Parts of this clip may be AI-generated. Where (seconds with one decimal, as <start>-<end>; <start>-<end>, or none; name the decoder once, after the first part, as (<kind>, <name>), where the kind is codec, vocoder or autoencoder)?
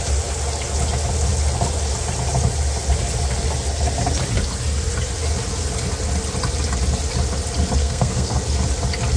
7.8-8.4 (codec, SNAC)